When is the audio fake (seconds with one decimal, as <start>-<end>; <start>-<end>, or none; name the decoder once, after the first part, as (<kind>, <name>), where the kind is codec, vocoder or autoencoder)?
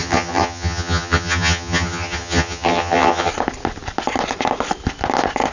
0.0-3.3 (vocoder, HiFi-GAN)